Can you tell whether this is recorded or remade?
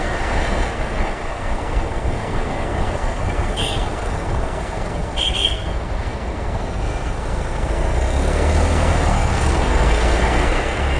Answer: remade